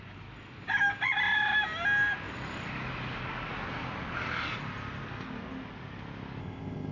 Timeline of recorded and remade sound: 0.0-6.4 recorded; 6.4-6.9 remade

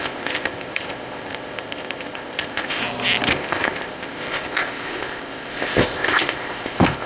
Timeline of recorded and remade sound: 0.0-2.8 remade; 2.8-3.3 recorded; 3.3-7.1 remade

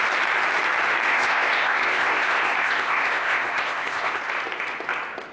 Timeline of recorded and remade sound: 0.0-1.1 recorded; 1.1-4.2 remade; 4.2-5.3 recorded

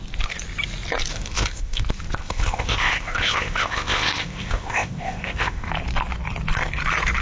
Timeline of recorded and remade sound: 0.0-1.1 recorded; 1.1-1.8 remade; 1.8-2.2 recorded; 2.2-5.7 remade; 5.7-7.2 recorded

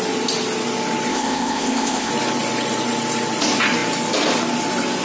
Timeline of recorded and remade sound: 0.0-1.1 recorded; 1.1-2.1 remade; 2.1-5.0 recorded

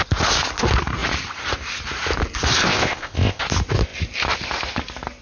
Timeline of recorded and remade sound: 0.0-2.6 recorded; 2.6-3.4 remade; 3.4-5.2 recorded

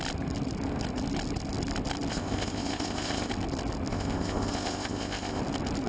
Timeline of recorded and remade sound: 0.0-2.1 recorded; 2.1-3.3 remade; 3.3-3.9 recorded; 3.9-5.4 remade; 5.4-5.9 recorded

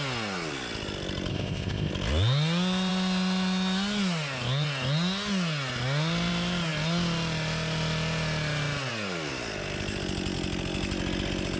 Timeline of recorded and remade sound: 0.0-1.3 recorded; 1.3-1.9 remade; 1.9-11.6 recorded